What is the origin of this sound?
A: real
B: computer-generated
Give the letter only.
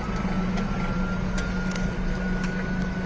A